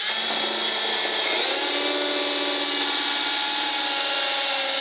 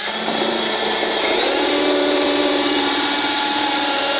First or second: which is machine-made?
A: second